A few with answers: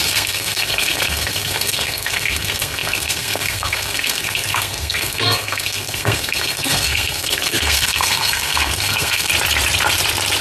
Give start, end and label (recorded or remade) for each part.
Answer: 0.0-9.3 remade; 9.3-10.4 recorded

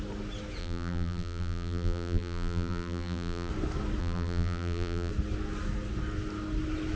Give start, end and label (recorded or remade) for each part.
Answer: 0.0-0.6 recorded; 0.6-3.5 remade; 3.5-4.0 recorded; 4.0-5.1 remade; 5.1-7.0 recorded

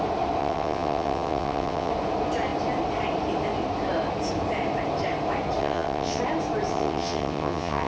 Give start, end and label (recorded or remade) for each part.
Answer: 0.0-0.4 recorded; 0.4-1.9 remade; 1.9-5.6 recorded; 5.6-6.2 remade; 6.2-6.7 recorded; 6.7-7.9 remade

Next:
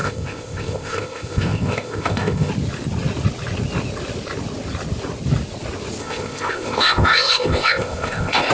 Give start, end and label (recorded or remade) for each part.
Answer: 0.0-2.5 remade; 2.5-6.0 recorded; 6.0-8.5 remade

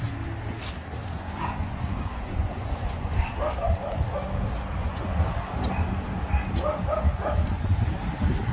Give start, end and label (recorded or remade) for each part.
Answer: 0.0-1.0 recorded; 1.0-3.3 remade; 3.3-4.8 recorded; 4.8-5.4 remade; 5.4-7.1 recorded; 7.1-7.8 remade; 7.8-8.5 recorded

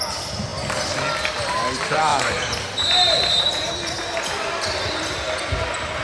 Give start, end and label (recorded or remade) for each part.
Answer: 0.0-2.1 recorded; 2.1-3.7 remade; 3.7-6.0 recorded

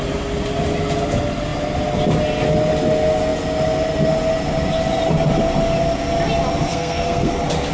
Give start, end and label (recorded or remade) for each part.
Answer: 0.0-6.7 recorded; 6.7-7.3 remade; 7.3-7.7 recorded